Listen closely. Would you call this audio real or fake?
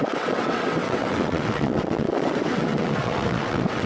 fake